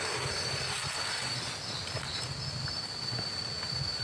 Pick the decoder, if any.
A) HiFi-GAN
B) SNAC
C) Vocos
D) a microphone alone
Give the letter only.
D